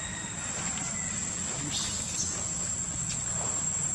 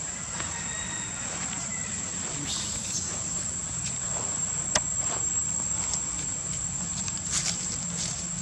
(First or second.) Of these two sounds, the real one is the first